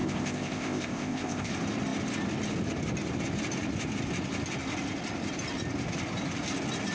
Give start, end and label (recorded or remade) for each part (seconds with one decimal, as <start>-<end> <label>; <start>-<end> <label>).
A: 0.0-1.5 remade; 1.5-6.9 recorded